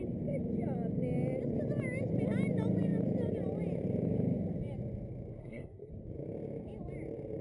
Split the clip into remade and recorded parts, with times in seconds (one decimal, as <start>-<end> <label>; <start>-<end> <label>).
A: 0.0-5.4 recorded; 5.4-5.9 remade; 5.9-7.4 recorded